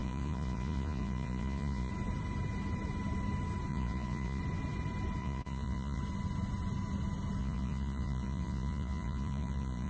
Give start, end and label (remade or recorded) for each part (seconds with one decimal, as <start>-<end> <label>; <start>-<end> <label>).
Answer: 0.0-1.9 remade; 1.9-3.7 recorded; 3.7-4.4 remade; 4.4-5.2 recorded; 5.2-6.0 remade; 6.0-7.4 recorded; 7.4-9.9 remade